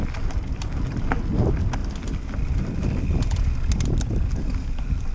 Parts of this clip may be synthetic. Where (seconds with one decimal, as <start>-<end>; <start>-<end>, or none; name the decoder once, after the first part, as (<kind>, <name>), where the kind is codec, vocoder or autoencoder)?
none